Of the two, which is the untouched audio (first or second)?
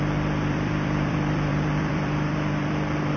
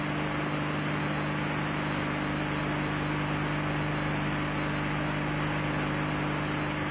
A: second